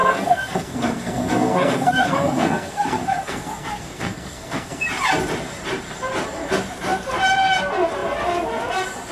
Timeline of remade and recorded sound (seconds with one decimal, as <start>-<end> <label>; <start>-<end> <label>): 0.0-4.8 remade; 4.8-9.1 recorded